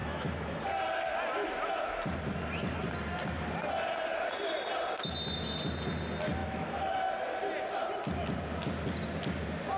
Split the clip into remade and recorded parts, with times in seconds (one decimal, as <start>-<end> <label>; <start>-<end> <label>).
0.0-0.6 remade; 0.6-6.4 recorded; 6.4-7.0 remade; 7.0-9.8 recorded